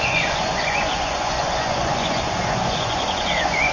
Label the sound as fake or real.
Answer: fake